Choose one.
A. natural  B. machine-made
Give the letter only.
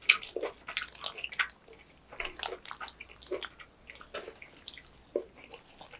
A